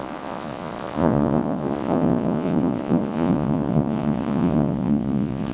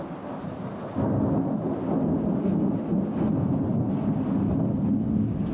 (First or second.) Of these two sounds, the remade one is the first